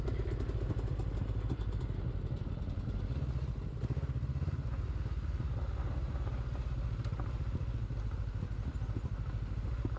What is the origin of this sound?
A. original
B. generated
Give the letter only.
A